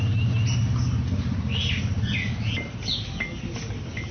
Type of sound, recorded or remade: recorded